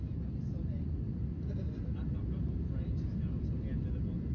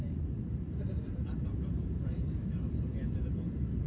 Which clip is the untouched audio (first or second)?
first